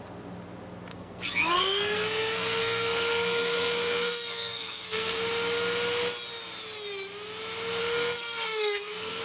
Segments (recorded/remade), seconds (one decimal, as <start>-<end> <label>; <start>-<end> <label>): 0.0-0.9 recorded; 0.9-5.2 remade; 5.2-7.8 recorded; 7.8-9.2 remade